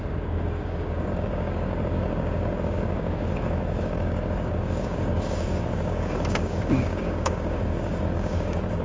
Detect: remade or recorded remade